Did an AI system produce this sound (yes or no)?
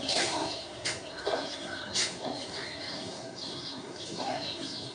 yes